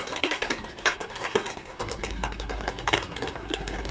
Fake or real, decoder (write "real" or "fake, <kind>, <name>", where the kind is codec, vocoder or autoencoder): fake, codec, SNAC